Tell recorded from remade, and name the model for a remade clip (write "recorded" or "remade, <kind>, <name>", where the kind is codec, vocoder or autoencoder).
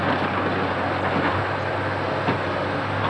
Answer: recorded